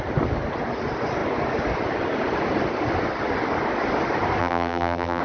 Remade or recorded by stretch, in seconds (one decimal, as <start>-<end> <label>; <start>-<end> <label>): 0.0-4.4 recorded; 4.4-5.2 remade